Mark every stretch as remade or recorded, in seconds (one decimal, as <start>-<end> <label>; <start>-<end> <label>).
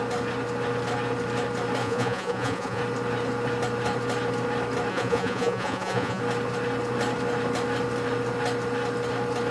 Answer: 0.0-1.8 recorded; 1.8-2.8 remade; 2.8-4.9 recorded; 4.9-6.2 remade; 6.2-9.5 recorded